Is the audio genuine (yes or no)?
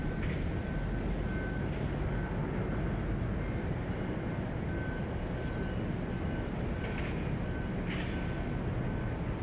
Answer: yes